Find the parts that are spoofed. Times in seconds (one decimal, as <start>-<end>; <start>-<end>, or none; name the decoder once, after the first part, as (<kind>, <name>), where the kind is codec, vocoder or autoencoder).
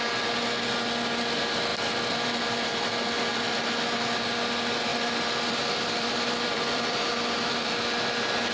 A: 1.7-2.9 (vocoder, BigVGAN v2); 4.9-7.1